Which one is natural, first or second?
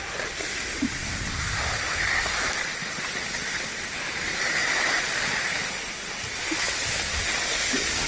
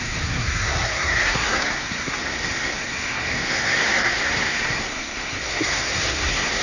first